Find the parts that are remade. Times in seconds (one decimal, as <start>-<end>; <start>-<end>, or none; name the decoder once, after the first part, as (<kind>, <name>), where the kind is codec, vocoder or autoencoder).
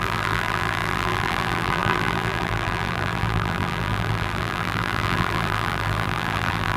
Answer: 0.0-6.8 (vocoder, BigVGAN v2)